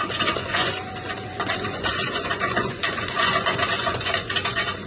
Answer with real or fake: fake